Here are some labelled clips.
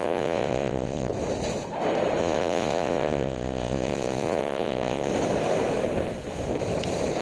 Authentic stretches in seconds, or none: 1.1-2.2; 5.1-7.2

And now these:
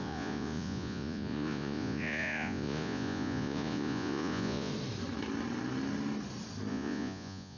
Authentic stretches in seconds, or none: 4.7-6.7

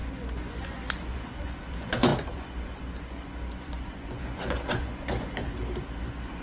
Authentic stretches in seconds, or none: 5.4-6.0

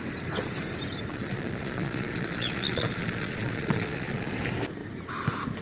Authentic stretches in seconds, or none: 0.0-1.1; 4.3-5.6